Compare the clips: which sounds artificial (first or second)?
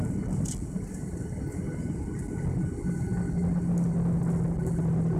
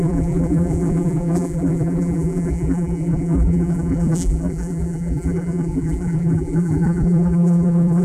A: second